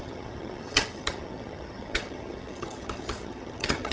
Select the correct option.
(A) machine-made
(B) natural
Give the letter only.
A